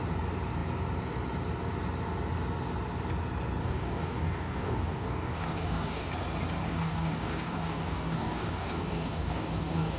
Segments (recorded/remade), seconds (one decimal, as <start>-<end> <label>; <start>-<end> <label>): 0.0-3.6 recorded; 3.6-6.1 remade; 6.1-6.6 recorded; 6.6-10.0 remade